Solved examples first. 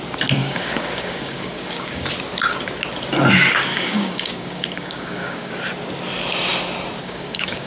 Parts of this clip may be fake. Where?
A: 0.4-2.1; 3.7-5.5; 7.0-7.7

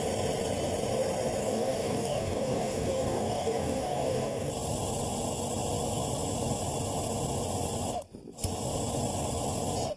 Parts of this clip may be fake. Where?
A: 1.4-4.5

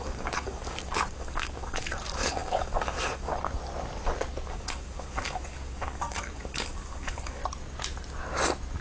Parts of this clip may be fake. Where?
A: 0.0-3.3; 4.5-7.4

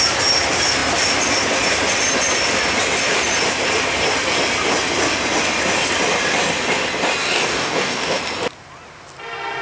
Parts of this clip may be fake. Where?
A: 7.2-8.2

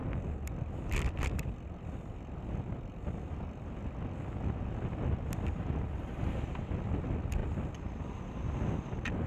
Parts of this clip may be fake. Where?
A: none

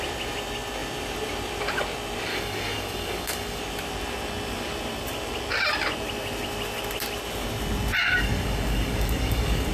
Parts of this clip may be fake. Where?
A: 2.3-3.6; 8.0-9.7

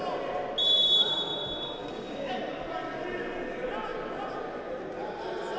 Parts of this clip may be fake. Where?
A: 1.8-2.3

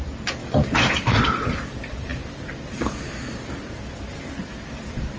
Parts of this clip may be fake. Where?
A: none